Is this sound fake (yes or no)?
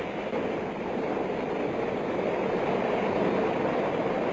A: no